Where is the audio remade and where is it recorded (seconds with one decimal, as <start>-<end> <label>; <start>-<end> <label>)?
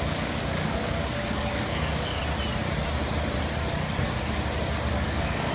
0.0-2.2 remade; 2.2-4.9 recorded; 4.9-5.5 remade